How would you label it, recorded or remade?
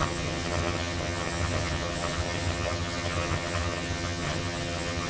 remade